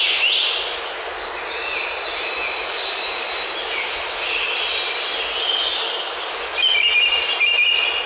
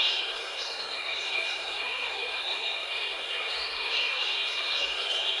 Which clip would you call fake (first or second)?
second